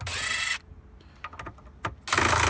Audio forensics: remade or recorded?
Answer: recorded